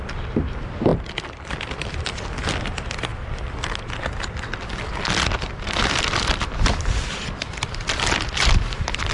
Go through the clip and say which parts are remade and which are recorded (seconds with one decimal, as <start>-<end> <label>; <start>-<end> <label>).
0.0-3.1 remade; 3.1-6.0 recorded; 6.0-9.1 remade